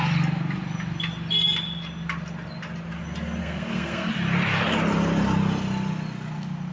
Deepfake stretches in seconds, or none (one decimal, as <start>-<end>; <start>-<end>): 3.4-4.1